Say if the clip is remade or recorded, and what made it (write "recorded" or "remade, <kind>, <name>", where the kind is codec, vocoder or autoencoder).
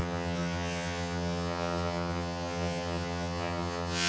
remade, vocoder, HiFi-GAN